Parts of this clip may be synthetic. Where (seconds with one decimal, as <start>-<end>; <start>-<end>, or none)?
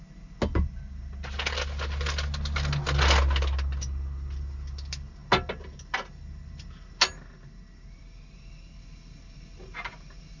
none